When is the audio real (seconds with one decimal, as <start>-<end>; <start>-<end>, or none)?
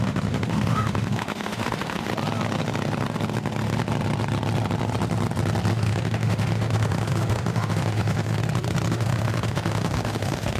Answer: 2.1-5.7; 8.4-8.9